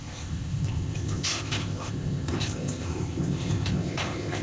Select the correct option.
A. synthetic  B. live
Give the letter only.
A